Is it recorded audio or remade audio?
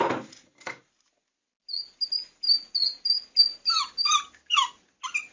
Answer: recorded